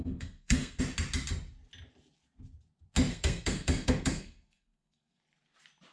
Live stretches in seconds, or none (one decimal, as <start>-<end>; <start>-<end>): 0.8-3.1; 5.2-5.9